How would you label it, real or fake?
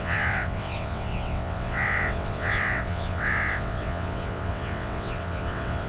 fake